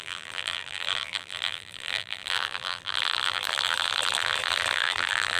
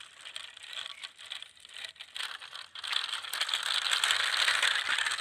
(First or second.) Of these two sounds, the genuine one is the second